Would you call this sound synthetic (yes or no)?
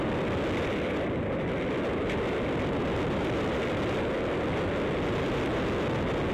no